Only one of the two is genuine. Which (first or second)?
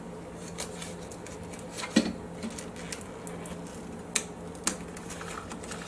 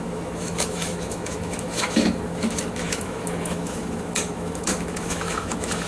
first